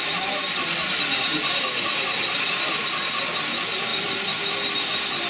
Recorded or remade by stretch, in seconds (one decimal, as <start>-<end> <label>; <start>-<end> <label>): 0.0-5.3 recorded